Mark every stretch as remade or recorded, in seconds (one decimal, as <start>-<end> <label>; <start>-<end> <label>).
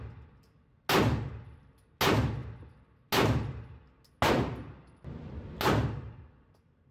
0.0-6.9 recorded